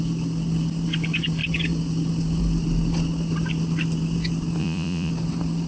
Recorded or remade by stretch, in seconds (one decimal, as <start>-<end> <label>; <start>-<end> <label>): 0.0-4.6 recorded; 4.6-5.1 remade; 5.1-5.7 recorded